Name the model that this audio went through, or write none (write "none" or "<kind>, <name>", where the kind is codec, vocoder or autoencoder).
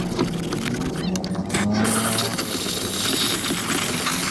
none